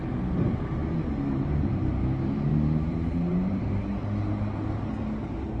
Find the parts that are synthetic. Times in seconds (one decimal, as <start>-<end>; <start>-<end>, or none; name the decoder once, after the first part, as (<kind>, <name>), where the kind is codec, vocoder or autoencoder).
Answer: 2.5-3.7 (vocoder, BigVGAN v2)